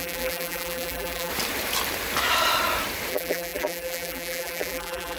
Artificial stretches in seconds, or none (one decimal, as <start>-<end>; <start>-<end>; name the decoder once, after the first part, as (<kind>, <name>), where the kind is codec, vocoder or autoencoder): 0.0-1.3 (vocoder, BigVGAN v2); 3.1-5.2